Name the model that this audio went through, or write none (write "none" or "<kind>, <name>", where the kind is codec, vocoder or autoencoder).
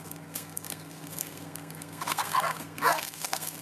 codec, SNAC